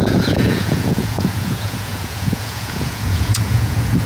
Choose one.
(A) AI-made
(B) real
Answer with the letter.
A